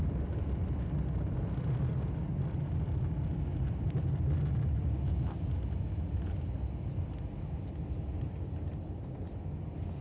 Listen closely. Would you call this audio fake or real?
real